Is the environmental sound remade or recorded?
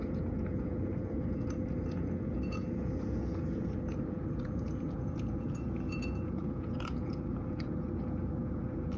remade